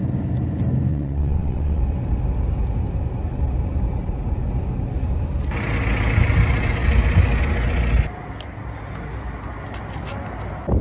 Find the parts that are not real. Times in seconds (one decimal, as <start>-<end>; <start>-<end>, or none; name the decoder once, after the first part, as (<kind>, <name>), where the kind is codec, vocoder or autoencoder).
0.9-1.8 (vocoder, WaveNeXt)